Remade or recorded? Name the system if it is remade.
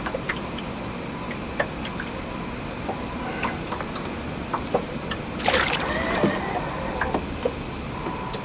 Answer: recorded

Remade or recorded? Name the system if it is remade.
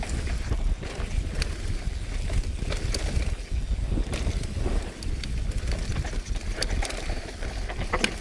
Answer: recorded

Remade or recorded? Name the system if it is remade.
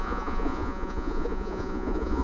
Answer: remade, vocoder, Vocos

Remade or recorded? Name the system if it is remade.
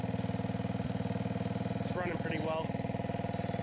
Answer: recorded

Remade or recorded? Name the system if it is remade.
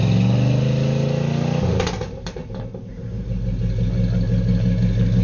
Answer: recorded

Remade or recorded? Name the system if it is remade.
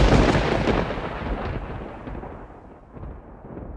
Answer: recorded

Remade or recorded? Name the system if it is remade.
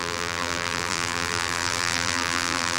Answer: remade, vocoder, BigVGAN v2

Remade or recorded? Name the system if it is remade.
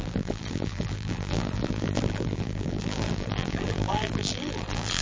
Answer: remade, vocoder, BigVGAN v2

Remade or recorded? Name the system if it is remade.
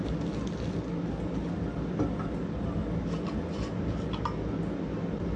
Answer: recorded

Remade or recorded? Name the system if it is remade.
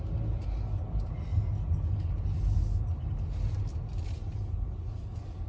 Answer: recorded